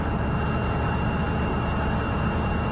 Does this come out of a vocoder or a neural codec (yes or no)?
no